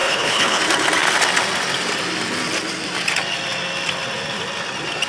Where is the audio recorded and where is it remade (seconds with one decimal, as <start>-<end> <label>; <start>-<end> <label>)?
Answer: 0.0-0.6 remade; 0.6-5.1 recorded